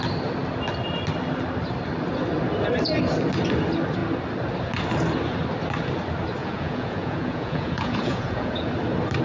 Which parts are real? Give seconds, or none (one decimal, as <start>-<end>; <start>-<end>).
0.0-6.4; 8.7-9.2